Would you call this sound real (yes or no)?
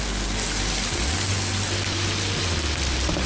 yes